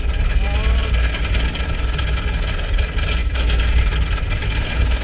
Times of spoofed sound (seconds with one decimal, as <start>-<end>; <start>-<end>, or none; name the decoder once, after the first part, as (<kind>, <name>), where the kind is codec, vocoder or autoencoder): 3.2-3.7 (autoencoder, DAC-VAE)